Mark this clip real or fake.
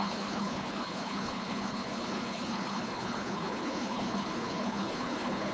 fake